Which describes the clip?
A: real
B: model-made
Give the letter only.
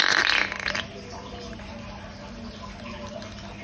A